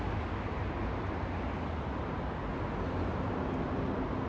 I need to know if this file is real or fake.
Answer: real